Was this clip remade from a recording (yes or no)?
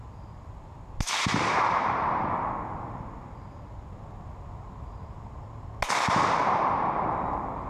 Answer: no